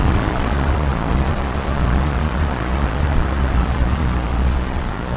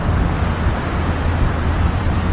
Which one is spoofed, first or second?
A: first